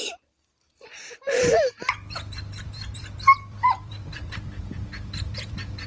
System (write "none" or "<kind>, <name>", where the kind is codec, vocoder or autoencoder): vocoder, BigVGAN v2